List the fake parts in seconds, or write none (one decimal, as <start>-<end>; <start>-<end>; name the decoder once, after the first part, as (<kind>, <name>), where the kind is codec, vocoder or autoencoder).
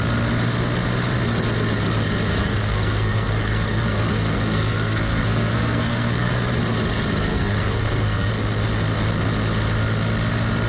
2.3-6.3 (codec, SNAC); 7.3-8.3